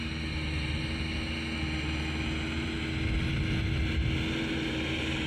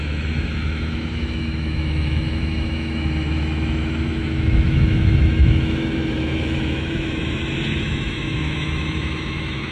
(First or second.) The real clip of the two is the first